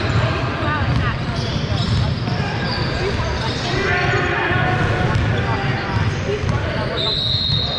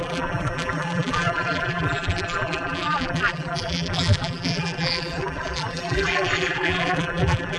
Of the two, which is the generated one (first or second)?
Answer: second